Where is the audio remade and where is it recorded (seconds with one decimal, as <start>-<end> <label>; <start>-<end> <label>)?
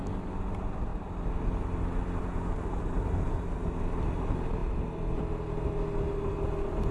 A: 0.0-6.9 recorded